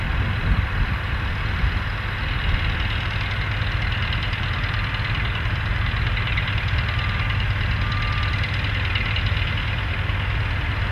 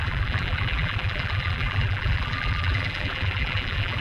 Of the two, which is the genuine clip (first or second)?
first